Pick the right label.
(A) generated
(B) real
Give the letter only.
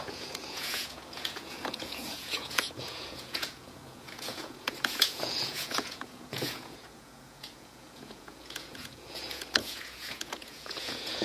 A